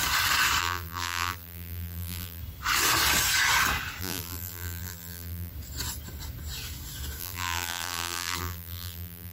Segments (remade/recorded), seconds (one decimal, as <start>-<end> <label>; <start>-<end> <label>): 0.0-0.6 recorded; 0.6-2.4 remade; 2.4-4.0 recorded; 4.0-5.5 remade; 5.5-7.2 recorded; 7.2-9.3 remade